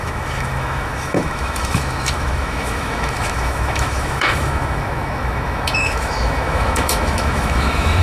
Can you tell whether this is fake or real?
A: fake